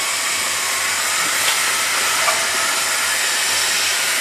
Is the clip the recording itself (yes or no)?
yes